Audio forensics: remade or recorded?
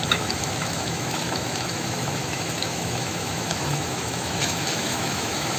remade